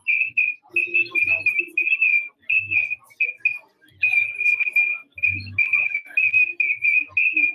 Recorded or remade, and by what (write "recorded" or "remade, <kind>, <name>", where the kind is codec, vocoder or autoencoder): recorded